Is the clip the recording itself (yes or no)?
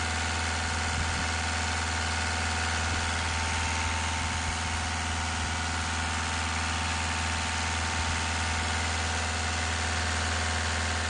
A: yes